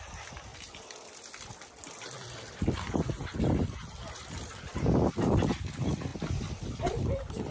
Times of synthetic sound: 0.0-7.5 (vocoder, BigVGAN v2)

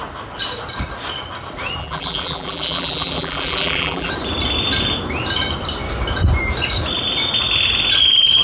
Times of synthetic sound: 1.8-4.1 (vocoder, BigVGAN v2)

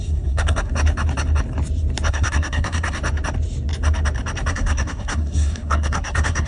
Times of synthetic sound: 0.0-0.7 (codec, SNAC); 2.1-3.0; 4.5-6.5

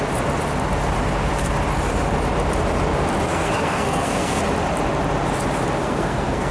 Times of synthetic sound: 3.3-4.4 (codec, SNAC); 5.8-6.5

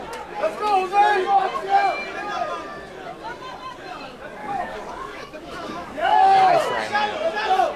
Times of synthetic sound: 4.4-6.5 (codec, DAC)

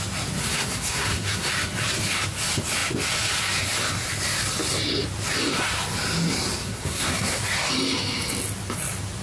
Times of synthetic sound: 0.4-1.5 (codec, SNAC); 6.6-7.4

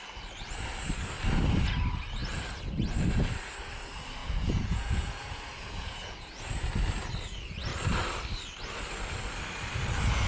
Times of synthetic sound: 4.2-6.7 (vocoder, Vocos)